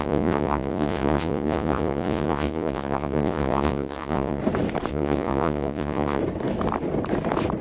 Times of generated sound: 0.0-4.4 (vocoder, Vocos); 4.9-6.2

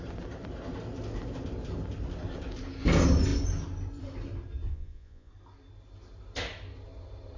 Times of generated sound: 4.7-5.3 (vocoder, Vocos)

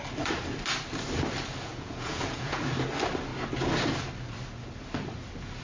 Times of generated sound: 1.7-2.6 (vocoder, Vocos)

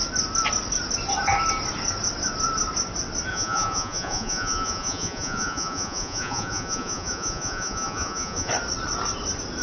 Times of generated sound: 3.3-8.5 (vocoder, Vocos)

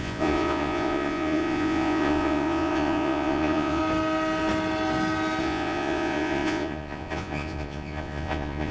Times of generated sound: 0.0-3.8 (vocoder, Vocos); 5.4-8.7

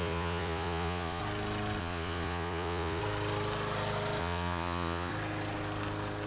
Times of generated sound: 0.0-1.2 (vocoder, Vocos); 1.8-3.0; 4.2-5.1

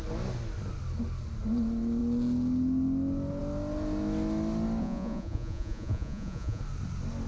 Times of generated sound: 4.8-6.6 (vocoder, Vocos)